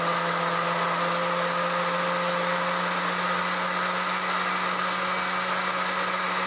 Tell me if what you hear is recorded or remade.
recorded